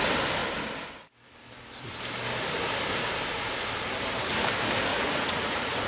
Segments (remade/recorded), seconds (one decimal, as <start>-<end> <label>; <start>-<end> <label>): 0.0-4.9 recorded; 4.9-5.9 remade

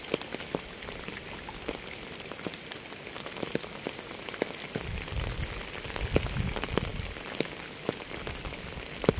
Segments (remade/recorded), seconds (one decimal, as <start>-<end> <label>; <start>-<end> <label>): 0.0-9.2 recorded

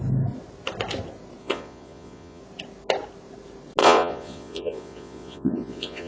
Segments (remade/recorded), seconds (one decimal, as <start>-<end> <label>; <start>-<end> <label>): 0.0-1.4 recorded; 1.4-2.4 remade; 2.4-3.8 recorded; 3.8-6.1 remade

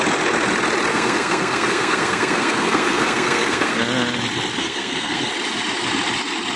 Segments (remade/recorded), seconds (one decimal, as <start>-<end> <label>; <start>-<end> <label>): 0.0-0.9 recorded; 0.9-3.8 remade; 3.8-4.6 recorded; 4.6-5.3 remade; 5.3-6.6 recorded